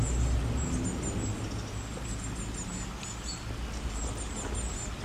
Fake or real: real